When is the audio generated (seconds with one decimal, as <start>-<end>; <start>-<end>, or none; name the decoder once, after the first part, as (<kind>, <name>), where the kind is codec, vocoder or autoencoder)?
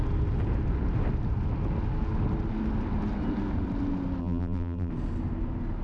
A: 4.2-4.9 (vocoder, BigVGAN v2)